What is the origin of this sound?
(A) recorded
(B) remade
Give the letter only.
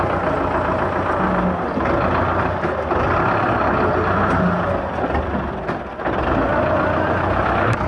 A